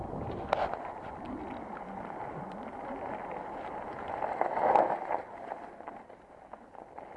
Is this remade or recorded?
recorded